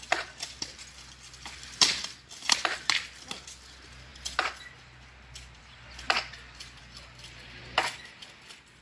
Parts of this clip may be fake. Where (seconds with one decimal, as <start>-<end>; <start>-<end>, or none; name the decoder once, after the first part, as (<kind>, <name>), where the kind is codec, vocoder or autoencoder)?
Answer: 6.8-7.6 (vocoder, BigVGAN v2)